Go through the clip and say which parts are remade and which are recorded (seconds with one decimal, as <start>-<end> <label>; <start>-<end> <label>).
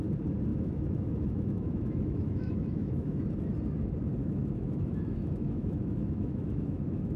0.0-0.5 recorded; 0.5-3.2 remade; 3.2-4.2 recorded; 4.2-7.2 remade